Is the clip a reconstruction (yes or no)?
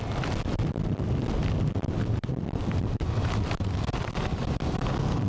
no